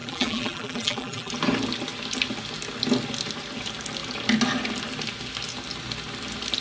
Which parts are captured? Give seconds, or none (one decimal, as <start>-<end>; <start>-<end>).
1.3-6.6